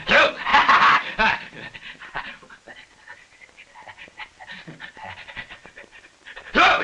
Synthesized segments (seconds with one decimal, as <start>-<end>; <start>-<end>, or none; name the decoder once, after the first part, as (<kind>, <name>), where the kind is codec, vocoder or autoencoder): 0.5-2.0 (vocoder, BigVGAN v2)